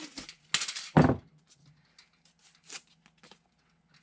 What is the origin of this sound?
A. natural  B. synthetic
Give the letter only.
A